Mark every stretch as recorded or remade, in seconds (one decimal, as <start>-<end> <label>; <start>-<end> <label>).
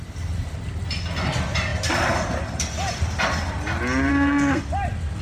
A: 0.0-4.1 recorded; 4.1-4.6 remade; 4.6-5.2 recorded